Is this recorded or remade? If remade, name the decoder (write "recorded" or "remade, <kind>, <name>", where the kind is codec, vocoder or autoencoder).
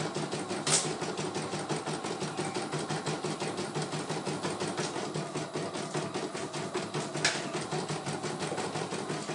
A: recorded